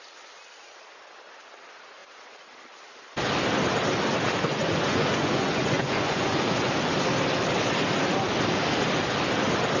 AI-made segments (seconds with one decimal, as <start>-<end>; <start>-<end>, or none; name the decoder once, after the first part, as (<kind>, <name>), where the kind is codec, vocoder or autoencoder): 4.5-6.7 (vocoder, Vocos)